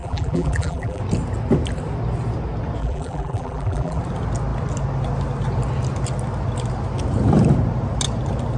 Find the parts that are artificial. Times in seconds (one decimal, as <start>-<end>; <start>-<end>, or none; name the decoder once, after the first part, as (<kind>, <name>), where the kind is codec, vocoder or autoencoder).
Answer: 0.0-1.0 (vocoder, BigVGAN v2); 2.8-4.0